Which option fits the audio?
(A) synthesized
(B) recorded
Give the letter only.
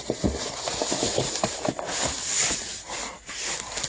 B